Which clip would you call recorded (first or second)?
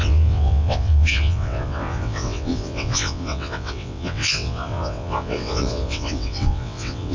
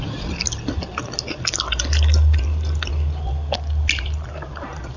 second